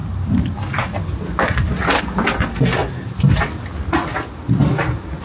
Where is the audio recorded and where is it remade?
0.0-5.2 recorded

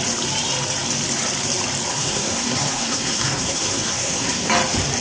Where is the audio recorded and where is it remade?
0.0-1.9 recorded; 1.9-4.5 remade; 4.5-5.0 recorded

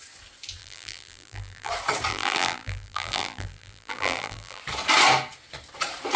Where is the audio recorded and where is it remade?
0.0-0.6 recorded; 0.6-1.7 remade; 1.7-2.1 recorded; 2.1-4.6 remade; 4.6-6.2 recorded

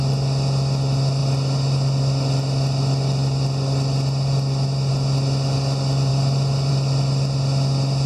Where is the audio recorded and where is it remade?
0.0-8.1 recorded

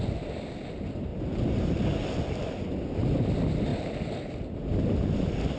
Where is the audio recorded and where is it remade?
0.0-5.6 recorded

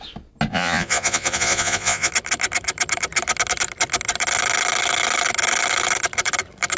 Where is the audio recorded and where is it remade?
0.0-0.5 recorded; 0.5-2.1 remade; 2.1-6.8 recorded